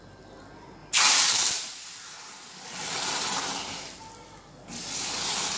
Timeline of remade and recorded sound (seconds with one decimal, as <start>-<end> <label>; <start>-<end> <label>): 0.0-0.8 recorded; 0.8-1.7 remade; 1.7-5.6 recorded